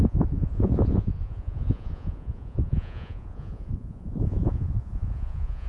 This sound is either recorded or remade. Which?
remade